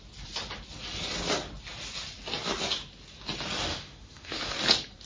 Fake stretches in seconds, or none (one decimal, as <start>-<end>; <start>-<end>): 3.7-4.6